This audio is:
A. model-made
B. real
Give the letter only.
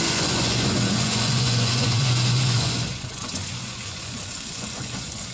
A